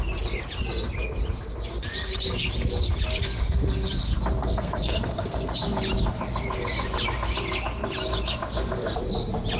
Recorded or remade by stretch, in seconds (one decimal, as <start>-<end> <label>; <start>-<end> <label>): 0.0-4.4 recorded; 4.4-5.5 remade; 5.5-9.6 recorded